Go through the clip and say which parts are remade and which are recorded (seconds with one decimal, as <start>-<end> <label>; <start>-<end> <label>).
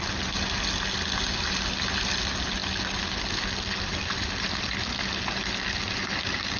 0.0-6.6 recorded